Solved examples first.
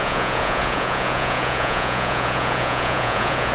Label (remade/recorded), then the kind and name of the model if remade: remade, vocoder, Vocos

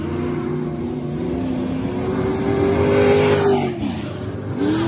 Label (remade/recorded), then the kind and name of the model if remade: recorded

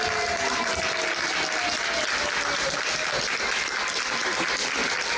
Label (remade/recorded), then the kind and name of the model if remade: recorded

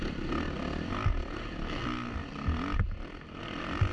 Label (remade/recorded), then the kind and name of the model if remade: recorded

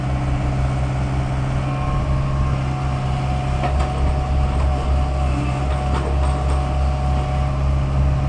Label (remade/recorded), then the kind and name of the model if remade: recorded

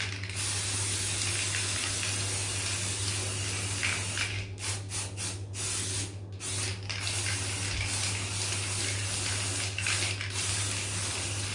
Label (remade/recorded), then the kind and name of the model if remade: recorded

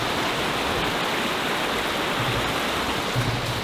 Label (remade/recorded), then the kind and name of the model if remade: recorded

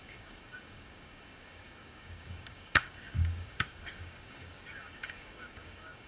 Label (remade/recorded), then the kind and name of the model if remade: remade, codec, DAC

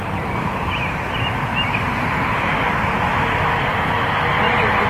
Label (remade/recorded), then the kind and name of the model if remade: recorded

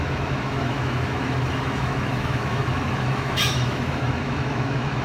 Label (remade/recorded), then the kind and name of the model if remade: remade, autoencoder, DAC-VAE